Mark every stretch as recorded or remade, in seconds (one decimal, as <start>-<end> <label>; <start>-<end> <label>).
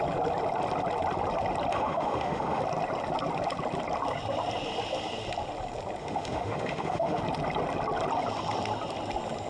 0.0-1.7 recorded; 1.7-2.6 remade; 2.6-6.0 recorded; 6.0-7.2 remade; 7.2-9.5 recorded